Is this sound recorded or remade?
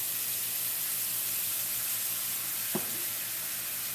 recorded